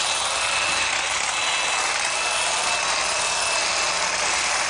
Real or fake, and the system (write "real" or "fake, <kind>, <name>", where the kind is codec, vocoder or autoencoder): real